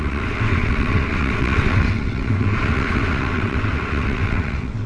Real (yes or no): no